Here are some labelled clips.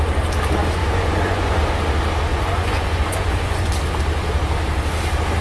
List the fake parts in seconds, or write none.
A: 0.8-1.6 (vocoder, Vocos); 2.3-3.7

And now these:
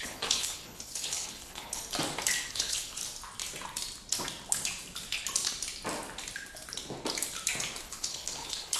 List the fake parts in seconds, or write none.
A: 0.0-1.8 (codec, HILCodec); 2.5-3.0; 7.8-8.8